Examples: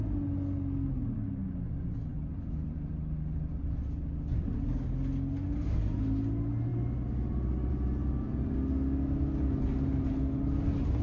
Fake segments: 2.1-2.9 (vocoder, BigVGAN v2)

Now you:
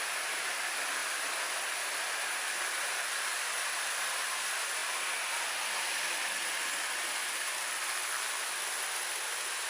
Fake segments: none